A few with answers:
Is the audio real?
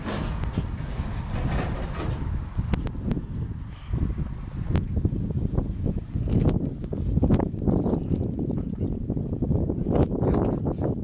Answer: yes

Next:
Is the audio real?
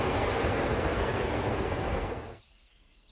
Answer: no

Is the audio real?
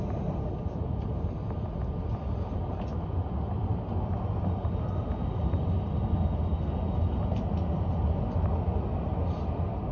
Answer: yes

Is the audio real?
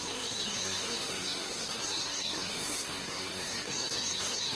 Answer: no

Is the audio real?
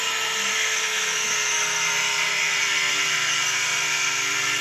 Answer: no